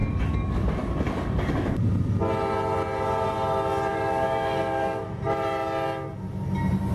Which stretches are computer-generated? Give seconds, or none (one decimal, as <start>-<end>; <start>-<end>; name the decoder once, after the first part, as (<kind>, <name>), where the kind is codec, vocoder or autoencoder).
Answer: 0.0-2.0 (codec, DAC); 3.9-5.0